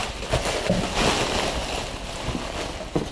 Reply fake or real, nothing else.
real